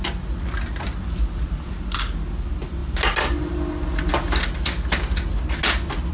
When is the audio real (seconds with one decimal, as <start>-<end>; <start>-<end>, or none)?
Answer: 0.0-6.1